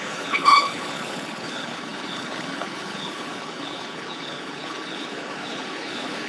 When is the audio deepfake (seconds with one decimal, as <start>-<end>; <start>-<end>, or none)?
0.0-6.3